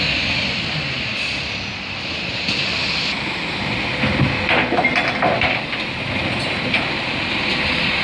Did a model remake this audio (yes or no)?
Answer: no